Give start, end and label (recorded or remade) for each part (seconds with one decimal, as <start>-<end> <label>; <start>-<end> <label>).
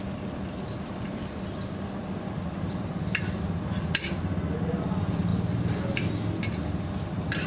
0.0-7.5 recorded